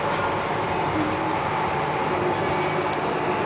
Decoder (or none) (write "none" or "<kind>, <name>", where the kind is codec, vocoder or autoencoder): none